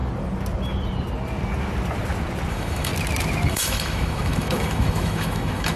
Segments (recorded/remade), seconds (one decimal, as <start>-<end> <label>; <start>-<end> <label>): 0.0-2.5 recorded; 2.5-2.9 remade; 2.9-3.5 recorded; 3.5-5.8 remade